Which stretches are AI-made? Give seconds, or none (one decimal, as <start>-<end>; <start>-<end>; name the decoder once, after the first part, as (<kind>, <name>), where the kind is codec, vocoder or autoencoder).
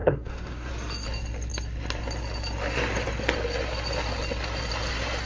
0.0-0.7 (codec, SNAC)